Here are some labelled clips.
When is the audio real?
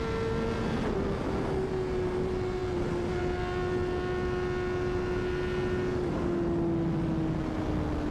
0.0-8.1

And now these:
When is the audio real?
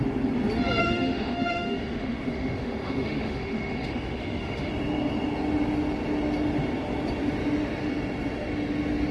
0.0-0.8; 4.7-9.1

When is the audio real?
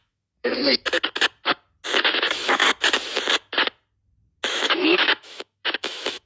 0.5-2.2; 2.6-4.5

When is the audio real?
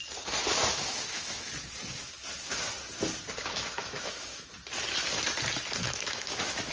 0.0-0.6; 1.5-3.4; 4.5-5.8